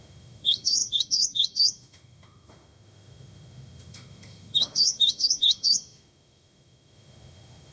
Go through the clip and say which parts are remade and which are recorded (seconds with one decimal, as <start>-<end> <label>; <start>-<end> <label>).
0.0-7.7 remade

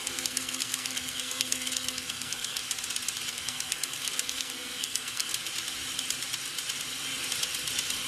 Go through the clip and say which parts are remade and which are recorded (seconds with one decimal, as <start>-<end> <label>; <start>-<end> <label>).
0.0-2.6 remade; 2.6-3.3 recorded; 3.3-5.3 remade; 5.3-8.1 recorded

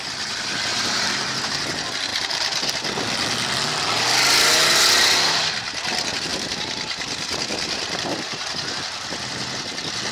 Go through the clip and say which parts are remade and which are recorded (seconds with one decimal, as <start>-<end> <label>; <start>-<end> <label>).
0.0-0.7 recorded; 0.7-1.4 remade; 1.4-2.1 recorded; 2.1-2.7 remade; 2.7-6.3 recorded; 6.3-7.4 remade; 7.4-10.1 recorded

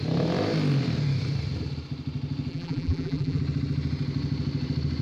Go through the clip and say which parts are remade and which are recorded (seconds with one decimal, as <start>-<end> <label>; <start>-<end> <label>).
0.0-2.5 recorded; 2.5-3.4 remade; 3.4-5.0 recorded